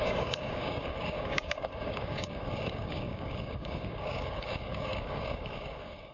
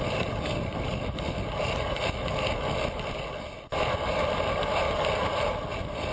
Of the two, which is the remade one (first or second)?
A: first